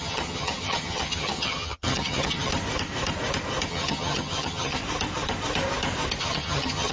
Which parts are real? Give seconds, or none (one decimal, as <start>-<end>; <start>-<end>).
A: 2.5-3.7; 4.8-6.2